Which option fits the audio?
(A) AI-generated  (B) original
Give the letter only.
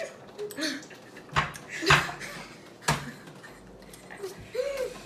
B